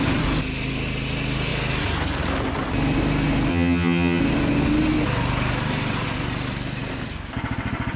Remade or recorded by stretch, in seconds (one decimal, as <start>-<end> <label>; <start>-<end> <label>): 0.0-3.5 recorded; 3.5-4.2 remade; 4.2-8.0 recorded